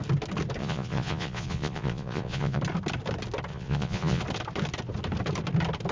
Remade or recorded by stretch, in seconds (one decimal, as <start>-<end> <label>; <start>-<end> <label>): 0.0-0.6 recorded; 0.6-2.6 remade; 2.6-3.5 recorded; 3.5-4.2 remade; 4.2-5.9 recorded